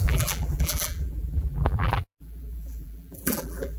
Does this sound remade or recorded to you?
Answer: remade